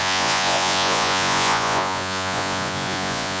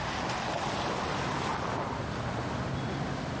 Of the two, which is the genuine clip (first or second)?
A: second